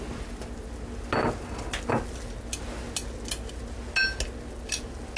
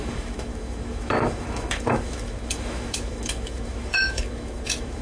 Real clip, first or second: first